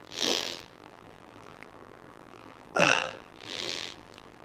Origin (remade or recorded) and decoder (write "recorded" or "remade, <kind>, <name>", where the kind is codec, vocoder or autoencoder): remade, vocoder, BigVGAN v2